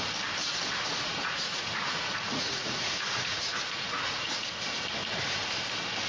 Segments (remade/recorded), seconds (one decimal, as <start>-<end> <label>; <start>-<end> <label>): 0.0-0.8 recorded; 0.8-4.5 remade; 4.5-6.1 recorded